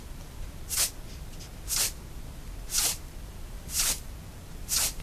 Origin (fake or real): fake